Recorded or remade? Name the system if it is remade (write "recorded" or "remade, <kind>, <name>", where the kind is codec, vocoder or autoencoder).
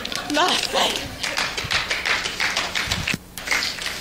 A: recorded